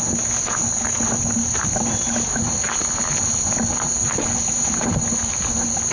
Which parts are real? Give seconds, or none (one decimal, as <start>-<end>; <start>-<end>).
0.0-5.9